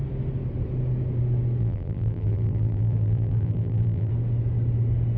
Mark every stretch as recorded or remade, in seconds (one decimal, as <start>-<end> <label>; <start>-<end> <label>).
0.0-1.6 recorded; 1.6-4.1 remade; 4.1-5.2 recorded